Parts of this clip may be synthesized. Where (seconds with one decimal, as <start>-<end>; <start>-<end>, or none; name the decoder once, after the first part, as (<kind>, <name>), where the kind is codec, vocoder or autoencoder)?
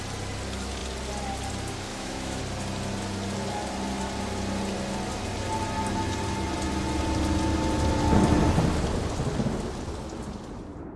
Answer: 1.9-2.4 (autoencoder, DAC-VAE)